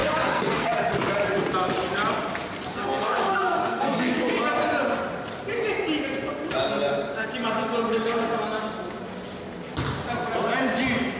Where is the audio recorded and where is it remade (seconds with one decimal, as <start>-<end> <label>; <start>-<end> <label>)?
0.0-0.8 remade; 0.8-2.7 recorded; 2.7-4.3 remade; 4.3-11.2 recorded